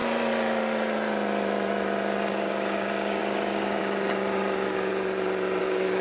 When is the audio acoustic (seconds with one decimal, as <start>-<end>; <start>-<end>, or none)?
0.0-2.3; 4.9-5.6